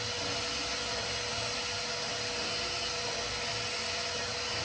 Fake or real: real